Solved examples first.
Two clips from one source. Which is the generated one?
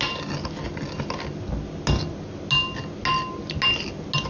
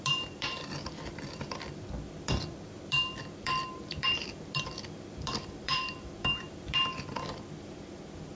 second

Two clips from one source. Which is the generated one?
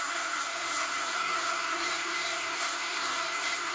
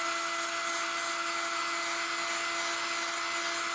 first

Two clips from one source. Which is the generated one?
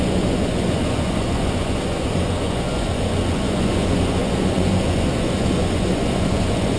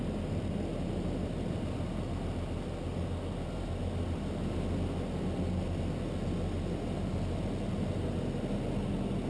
first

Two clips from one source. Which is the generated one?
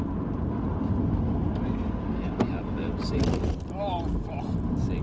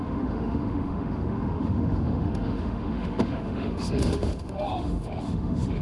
second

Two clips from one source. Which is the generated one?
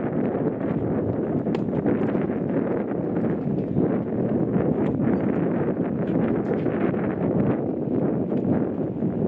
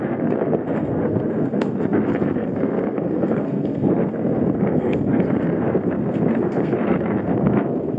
second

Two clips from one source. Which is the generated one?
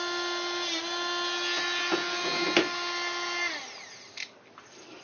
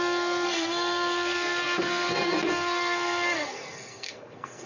second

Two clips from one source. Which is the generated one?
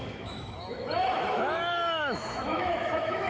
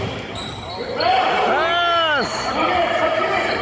first